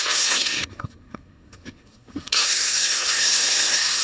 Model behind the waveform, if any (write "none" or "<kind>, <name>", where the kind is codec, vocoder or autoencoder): codec, SNAC